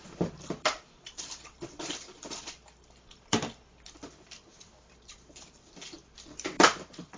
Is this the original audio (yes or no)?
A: no